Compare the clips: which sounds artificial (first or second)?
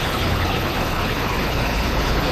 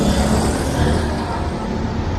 first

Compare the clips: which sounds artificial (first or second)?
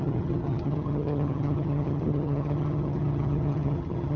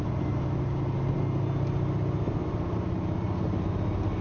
first